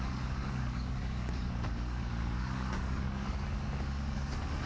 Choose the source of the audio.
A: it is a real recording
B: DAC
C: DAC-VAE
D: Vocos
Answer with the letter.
B